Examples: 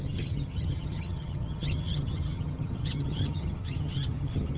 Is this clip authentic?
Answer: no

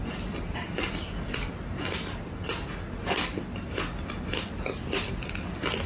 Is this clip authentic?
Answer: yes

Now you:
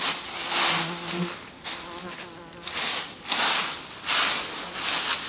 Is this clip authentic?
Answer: yes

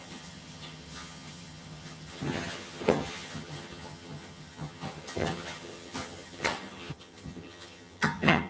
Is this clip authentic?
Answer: no